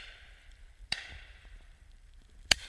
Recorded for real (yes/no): no